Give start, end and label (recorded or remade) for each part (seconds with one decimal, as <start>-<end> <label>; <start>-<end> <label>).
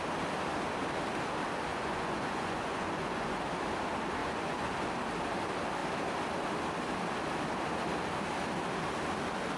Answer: 0.0-1.7 recorded; 1.7-3.4 remade; 3.4-4.2 recorded; 4.2-4.7 remade; 4.7-9.6 recorded